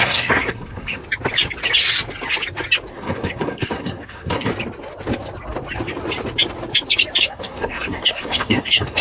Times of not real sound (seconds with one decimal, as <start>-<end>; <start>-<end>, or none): 0.0-1.0; 2.9-4.5; 7.2-9.0